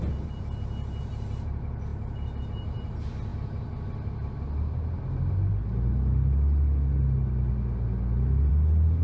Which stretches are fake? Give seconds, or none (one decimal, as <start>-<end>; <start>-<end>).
none